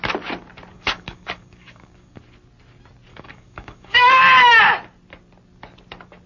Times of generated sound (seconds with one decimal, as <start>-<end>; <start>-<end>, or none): 0.7-2.2; 3.1-4.2